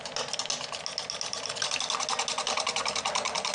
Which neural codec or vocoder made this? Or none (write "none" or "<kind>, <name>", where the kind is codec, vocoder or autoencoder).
none